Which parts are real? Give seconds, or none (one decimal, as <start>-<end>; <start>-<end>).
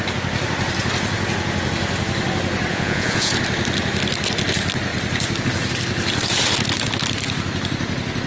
0.0-2.7; 3.3-8.3